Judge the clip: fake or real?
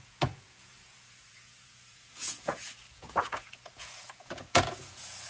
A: fake